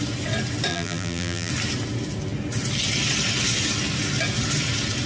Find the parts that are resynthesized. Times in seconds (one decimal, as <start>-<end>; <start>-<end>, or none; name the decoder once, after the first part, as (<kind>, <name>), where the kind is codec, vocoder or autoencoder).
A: 0.7-1.5 (vocoder, BigVGAN v2)